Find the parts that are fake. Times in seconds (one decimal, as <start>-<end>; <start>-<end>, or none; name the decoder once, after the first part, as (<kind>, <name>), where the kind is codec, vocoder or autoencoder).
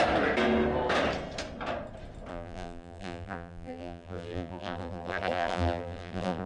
2.3-6.5 (vocoder, BigVGAN v2)